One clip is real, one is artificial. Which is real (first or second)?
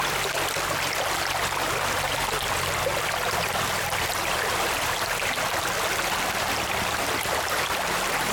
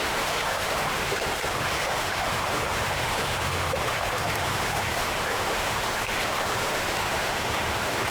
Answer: first